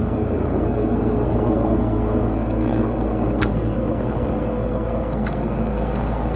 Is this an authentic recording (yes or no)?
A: no